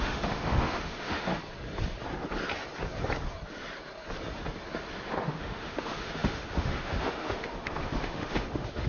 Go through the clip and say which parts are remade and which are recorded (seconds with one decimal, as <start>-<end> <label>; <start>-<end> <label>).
0.0-1.3 remade; 1.3-5.1 recorded; 5.1-8.9 remade